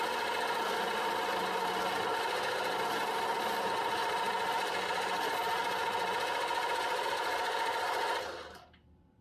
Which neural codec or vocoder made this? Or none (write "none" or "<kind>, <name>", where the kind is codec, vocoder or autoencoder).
none